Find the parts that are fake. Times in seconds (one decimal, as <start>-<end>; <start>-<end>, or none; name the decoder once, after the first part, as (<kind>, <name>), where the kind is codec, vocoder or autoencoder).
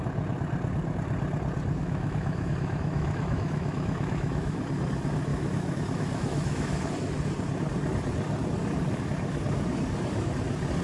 1.8-4.6 (autoencoder, DAC-VAE); 5.3-6.9